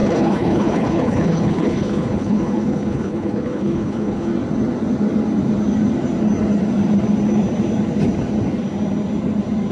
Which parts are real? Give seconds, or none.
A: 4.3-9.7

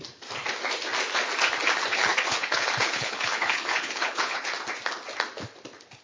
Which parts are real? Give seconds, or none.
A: 0.0-1.9; 4.5-6.0